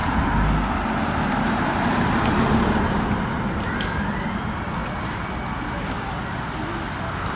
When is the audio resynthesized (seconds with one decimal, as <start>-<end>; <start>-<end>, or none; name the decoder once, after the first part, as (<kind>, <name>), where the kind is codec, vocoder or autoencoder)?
none